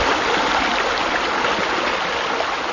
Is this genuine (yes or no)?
yes